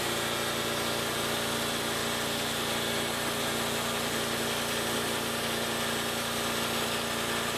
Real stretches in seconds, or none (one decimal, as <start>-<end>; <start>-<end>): 0.0-7.6